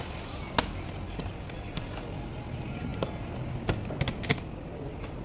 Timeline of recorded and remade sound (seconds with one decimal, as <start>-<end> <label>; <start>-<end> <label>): 0.0-5.2 recorded